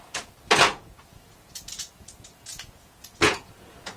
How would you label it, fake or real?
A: fake